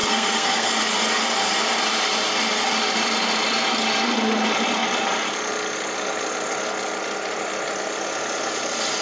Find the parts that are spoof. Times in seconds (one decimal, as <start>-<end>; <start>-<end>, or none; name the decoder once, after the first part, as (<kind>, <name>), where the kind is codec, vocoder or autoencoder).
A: 0.0-0.7 (codec, SNAC)